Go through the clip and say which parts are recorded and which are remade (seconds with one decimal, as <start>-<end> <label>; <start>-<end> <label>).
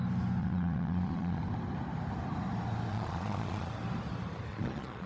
0.0-0.4 recorded; 0.4-1.4 remade; 1.4-2.9 recorded; 2.9-3.7 remade; 3.7-4.5 recorded; 4.5-5.1 remade